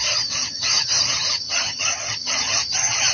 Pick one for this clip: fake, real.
fake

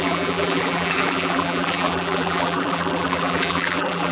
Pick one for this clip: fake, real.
fake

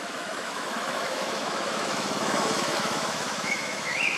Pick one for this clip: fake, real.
fake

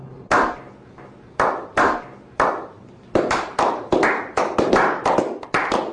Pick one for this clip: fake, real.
fake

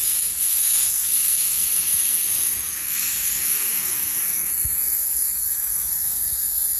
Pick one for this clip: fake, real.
fake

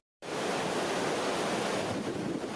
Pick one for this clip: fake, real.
fake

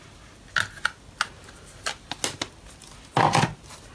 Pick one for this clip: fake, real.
real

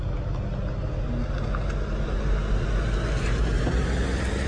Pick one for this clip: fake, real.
real